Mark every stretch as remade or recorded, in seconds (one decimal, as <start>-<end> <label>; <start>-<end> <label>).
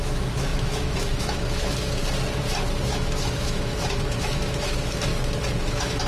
0.0-2.0 remade; 2.0-2.8 recorded; 2.8-5.1 remade; 5.1-5.6 recorded; 5.6-6.1 remade